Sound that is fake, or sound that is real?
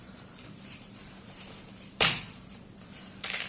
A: fake